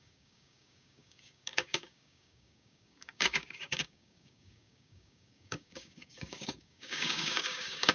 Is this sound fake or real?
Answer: fake